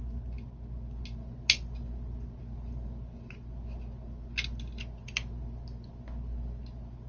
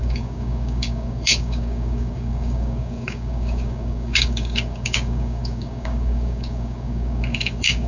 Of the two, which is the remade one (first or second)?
second